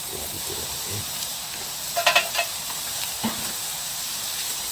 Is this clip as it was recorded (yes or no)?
no